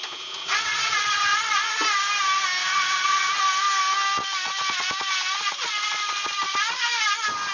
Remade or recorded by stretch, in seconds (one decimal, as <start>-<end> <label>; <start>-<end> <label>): 0.0-0.4 recorded; 0.4-1.7 remade; 1.7-2.6 recorded; 2.6-3.4 remade; 3.4-7.5 recorded